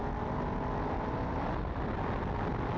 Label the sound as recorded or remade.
recorded